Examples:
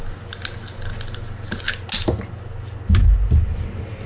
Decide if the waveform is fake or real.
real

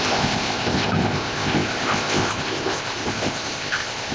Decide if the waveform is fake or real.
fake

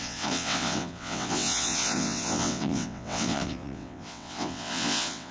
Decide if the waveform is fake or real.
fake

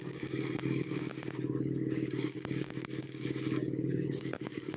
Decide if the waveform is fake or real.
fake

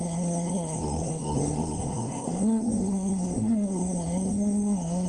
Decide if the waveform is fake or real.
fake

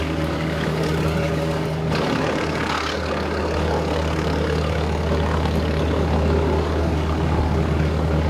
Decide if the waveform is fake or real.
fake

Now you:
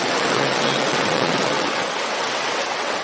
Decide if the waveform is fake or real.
fake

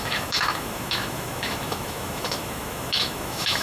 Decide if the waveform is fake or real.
fake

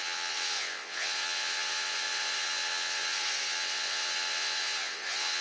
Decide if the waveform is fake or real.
fake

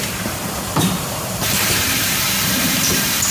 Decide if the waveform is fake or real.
fake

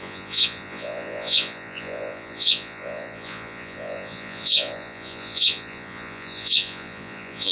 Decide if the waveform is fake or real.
fake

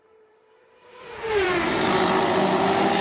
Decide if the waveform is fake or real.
fake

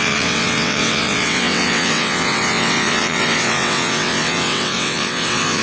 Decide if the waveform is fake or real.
fake